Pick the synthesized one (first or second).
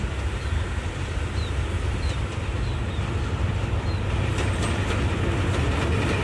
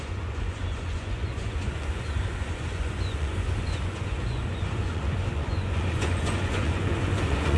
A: second